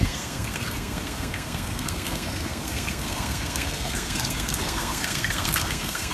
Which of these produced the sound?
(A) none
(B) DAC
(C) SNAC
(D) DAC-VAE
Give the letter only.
C